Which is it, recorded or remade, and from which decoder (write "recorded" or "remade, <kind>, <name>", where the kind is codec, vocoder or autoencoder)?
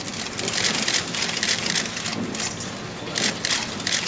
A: recorded